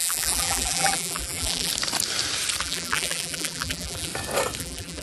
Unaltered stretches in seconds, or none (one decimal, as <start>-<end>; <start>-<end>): 1.7-2.6; 4.1-4.6